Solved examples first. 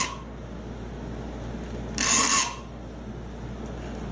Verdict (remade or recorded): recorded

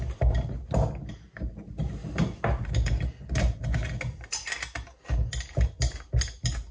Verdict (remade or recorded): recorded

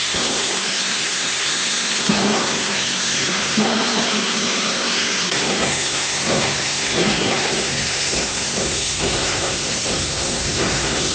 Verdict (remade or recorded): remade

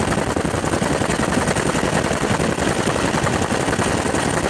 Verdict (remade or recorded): recorded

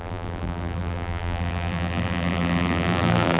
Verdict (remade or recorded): remade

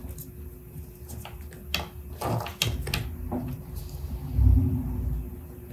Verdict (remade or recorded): recorded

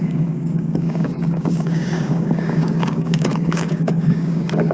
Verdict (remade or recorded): remade